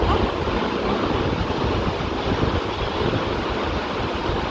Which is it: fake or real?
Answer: real